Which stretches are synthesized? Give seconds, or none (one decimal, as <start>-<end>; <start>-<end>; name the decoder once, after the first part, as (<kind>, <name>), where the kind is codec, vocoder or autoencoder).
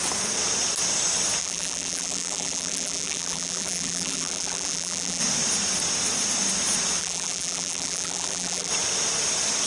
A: 1.4-5.2 (vocoder, BigVGAN v2); 7.0-8.7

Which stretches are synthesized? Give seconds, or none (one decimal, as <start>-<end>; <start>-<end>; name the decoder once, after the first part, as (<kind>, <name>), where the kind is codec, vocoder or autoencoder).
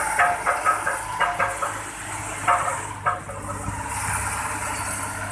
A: 2.7-3.2 (vocoder, BigVGAN v2)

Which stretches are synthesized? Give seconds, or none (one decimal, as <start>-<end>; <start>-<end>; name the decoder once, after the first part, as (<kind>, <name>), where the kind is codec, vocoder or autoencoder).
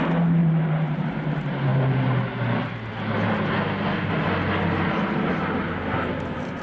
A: 0.4-1.2 (vocoder, BigVGAN v2)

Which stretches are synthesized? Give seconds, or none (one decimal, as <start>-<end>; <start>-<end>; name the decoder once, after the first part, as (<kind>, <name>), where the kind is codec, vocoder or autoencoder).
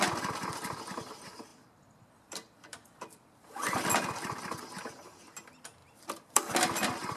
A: 1.5-4.4 (vocoder, BigVGAN v2); 5.8-6.5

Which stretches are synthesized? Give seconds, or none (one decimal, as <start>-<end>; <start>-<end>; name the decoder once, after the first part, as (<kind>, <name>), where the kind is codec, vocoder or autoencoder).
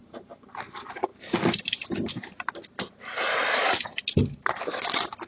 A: none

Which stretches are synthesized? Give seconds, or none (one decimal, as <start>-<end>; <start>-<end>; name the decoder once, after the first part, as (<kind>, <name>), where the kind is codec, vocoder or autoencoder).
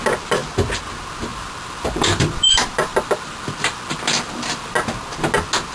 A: 1.3-4.7 (vocoder, BigVGAN v2)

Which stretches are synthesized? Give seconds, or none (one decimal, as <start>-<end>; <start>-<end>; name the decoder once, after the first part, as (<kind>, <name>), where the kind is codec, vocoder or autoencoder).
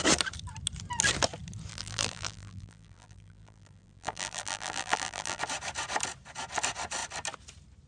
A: 1.7-5.4 (vocoder, BigVGAN v2)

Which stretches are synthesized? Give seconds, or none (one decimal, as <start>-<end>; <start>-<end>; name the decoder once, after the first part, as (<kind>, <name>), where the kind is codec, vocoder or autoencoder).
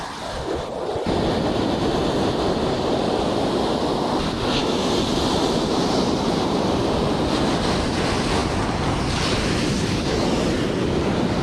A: none